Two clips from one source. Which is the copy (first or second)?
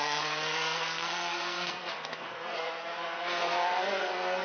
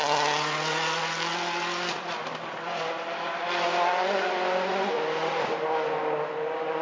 first